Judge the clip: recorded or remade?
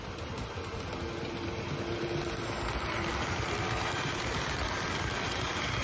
recorded